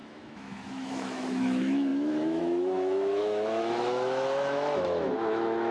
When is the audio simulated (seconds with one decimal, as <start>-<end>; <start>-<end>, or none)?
0.0-5.7